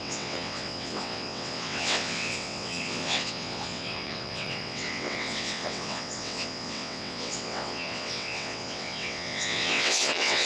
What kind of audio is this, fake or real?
fake